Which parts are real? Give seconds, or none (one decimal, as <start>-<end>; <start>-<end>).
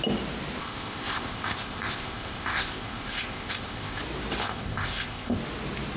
0.0-0.6; 4.0-4.4; 5.4-6.0